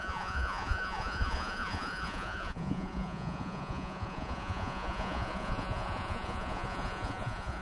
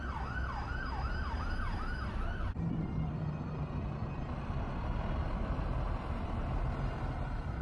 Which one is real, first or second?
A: second